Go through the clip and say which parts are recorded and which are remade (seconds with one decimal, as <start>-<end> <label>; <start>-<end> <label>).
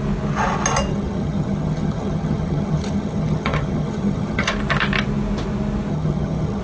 0.0-0.9 recorded; 0.9-4.5 remade; 4.5-5.9 recorded; 5.9-6.6 remade